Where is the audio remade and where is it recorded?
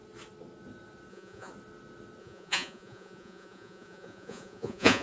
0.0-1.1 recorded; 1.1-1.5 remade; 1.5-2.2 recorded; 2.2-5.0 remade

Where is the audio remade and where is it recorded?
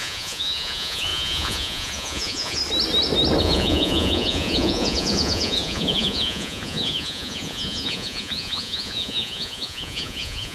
0.0-2.6 remade; 2.6-3.4 recorded; 3.4-10.5 remade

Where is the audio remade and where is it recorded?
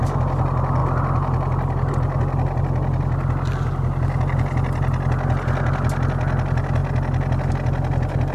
0.0-8.3 recorded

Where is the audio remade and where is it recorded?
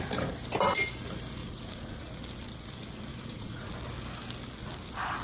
0.0-1.4 recorded; 1.4-2.1 remade; 2.1-3.1 recorded; 3.1-3.7 remade; 3.7-5.2 recorded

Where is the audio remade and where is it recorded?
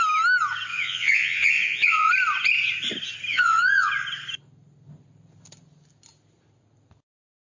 0.0-0.7 recorded; 0.7-2.1 remade; 2.1-3.3 recorded; 3.3-3.9 remade; 3.9-7.5 recorded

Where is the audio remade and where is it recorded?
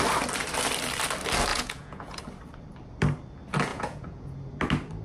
0.0-1.5 recorded; 1.5-2.2 remade; 2.2-3.7 recorded; 3.7-4.5 remade; 4.5-5.0 recorded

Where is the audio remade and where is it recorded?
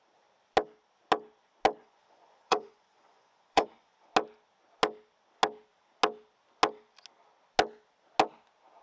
0.0-1.8 recorded; 1.8-4.1 remade; 4.1-8.8 recorded